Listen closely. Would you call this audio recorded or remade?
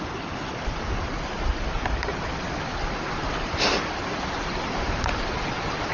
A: recorded